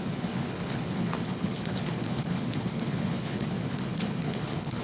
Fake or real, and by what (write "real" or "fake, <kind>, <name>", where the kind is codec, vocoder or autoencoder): fake, codec, HILCodec